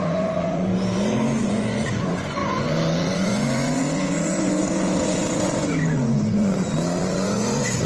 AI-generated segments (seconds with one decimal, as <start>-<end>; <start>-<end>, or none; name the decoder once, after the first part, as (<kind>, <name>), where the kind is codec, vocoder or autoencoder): 0.0-0.7 (vocoder, Vocos); 1.5-7.9